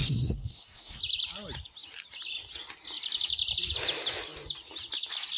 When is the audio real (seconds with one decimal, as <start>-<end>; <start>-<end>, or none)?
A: 1.0-5.4